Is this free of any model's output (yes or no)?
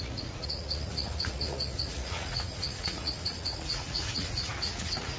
no